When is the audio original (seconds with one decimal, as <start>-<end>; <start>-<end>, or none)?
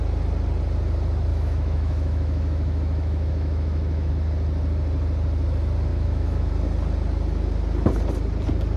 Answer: 0.0-1.3; 4.1-5.9; 6.5-8.8